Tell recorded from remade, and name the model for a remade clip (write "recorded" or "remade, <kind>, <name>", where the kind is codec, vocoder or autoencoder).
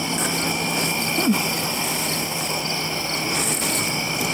recorded